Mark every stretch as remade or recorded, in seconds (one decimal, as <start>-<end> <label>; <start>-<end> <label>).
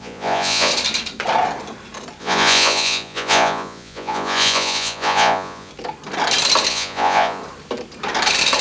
0.0-0.7 remade; 0.7-2.2 recorded; 2.2-5.7 remade; 5.7-6.7 recorded; 6.7-7.4 remade; 7.4-8.6 recorded